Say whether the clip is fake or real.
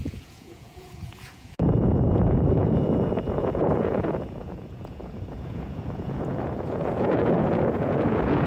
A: fake